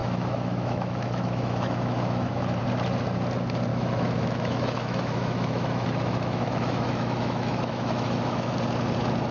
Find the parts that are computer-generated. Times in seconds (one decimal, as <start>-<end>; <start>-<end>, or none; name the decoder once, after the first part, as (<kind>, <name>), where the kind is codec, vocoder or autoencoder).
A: 0.0-2.6 (autoencoder, DAC-VAE); 3.7-8.5